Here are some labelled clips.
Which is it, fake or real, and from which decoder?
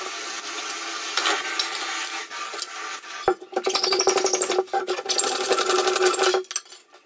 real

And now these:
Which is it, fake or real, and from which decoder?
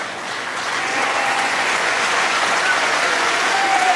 fake, vocoder, Vocos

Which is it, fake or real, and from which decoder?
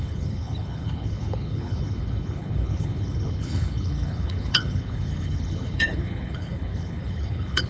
fake, codec, HILCodec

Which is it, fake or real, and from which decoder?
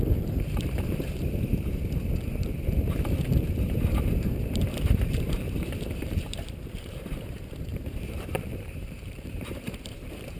fake, vocoder, BigVGAN v2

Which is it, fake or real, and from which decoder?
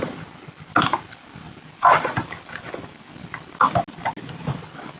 real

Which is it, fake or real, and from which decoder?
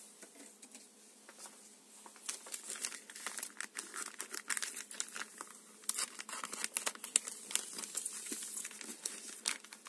real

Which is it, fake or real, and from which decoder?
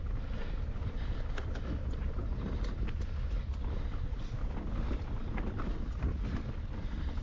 real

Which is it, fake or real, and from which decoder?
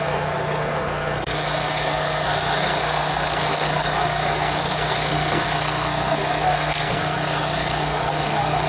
fake, codec, SNAC